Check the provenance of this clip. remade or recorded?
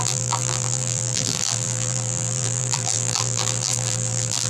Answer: remade